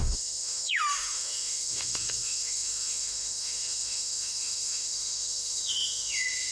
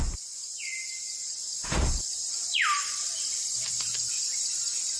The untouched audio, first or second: second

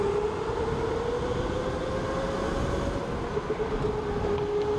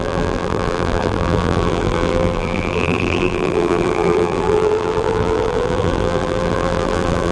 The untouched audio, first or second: first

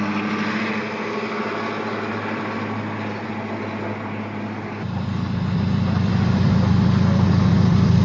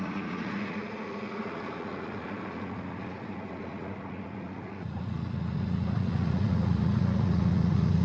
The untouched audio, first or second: first